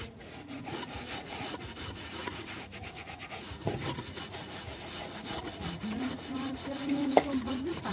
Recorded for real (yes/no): no